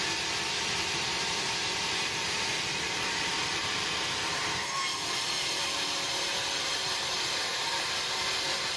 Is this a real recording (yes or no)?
no